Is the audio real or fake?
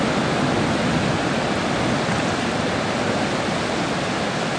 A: real